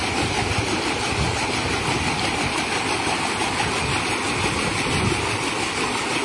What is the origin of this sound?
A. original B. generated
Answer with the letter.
A